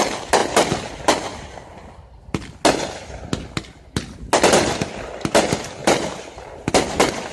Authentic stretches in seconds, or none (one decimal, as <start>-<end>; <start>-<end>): 0.0-5.8; 6.7-7.3